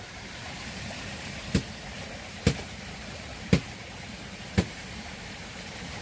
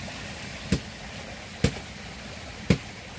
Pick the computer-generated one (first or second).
first